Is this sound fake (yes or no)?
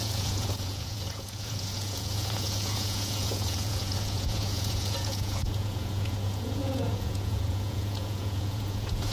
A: yes